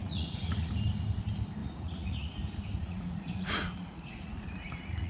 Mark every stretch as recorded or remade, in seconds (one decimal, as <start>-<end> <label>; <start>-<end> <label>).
0.0-0.7 remade; 0.7-1.6 recorded; 1.6-2.3 remade; 2.3-2.8 recorded; 2.8-5.1 remade